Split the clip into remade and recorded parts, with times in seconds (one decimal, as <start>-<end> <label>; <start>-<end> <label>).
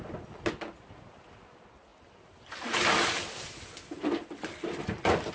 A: 0.0-5.3 recorded